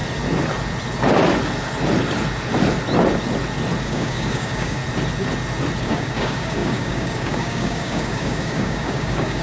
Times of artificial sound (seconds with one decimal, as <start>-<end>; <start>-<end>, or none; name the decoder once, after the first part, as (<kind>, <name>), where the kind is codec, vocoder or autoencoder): 3.8-4.8 (codec, DAC); 5.8-9.4

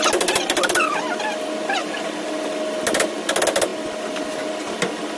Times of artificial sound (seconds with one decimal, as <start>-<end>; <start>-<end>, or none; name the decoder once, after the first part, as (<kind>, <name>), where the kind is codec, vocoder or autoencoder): none